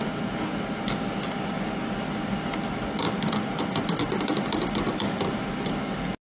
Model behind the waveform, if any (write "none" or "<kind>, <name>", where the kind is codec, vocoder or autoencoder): none